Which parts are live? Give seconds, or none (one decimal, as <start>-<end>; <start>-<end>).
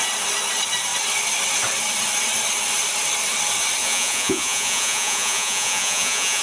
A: 0.0-3.8